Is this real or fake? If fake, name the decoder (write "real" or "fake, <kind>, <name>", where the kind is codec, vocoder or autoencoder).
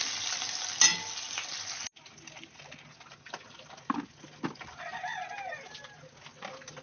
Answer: real